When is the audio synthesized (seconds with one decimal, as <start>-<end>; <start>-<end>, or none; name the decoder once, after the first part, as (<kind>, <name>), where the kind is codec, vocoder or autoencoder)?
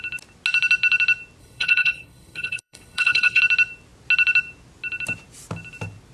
1.4-3.4 (codec, HILCodec)